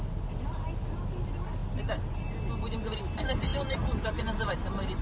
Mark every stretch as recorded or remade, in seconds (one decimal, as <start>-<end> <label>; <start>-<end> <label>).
0.0-5.0 recorded